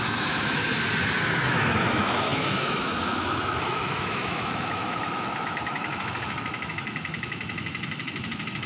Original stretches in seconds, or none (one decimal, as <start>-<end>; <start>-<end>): 0.6-1.5